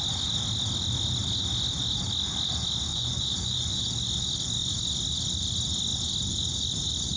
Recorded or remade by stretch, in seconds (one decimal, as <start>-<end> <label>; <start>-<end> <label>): 0.0-2.9 recorded; 2.9-3.8 remade; 3.8-7.2 recorded